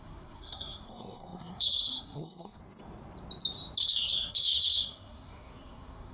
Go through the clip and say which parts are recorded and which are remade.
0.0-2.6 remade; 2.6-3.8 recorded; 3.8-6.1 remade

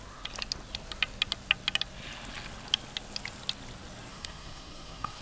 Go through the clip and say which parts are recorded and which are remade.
0.0-4.1 recorded; 4.1-5.2 remade

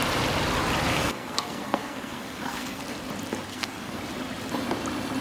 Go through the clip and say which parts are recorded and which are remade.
0.0-0.9 recorded; 0.9-2.8 remade; 2.8-3.5 recorded; 3.5-4.0 remade; 4.0-5.2 recorded

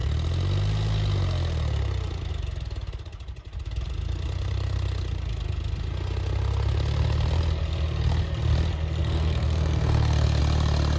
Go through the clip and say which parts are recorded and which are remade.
0.0-9.0 recorded; 9.0-10.4 remade; 10.4-11.0 recorded

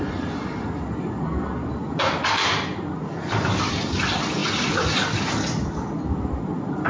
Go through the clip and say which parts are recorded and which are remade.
0.0-6.9 recorded

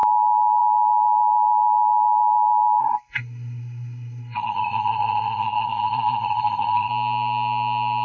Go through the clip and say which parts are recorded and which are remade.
0.0-2.8 recorded; 2.8-6.9 remade; 6.9-8.0 recorded